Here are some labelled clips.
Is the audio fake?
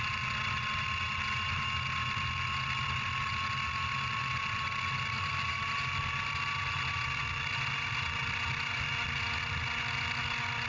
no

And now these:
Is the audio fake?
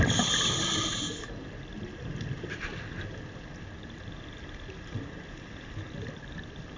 no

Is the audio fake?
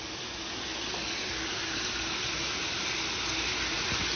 no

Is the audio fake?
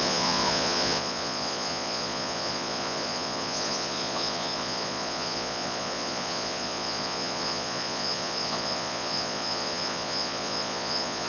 yes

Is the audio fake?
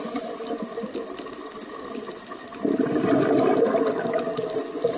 no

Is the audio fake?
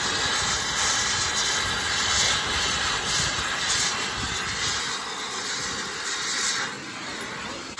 no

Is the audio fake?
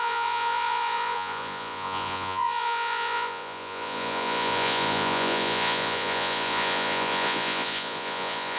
yes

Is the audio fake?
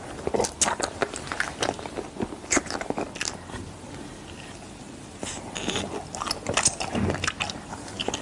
no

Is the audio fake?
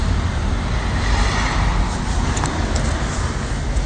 no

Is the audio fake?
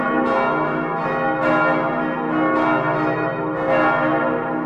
no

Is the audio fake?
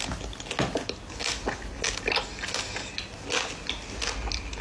no